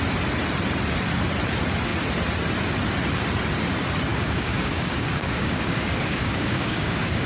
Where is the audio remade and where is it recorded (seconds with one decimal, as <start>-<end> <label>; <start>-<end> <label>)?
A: 0.0-4.1 recorded; 4.1-7.3 remade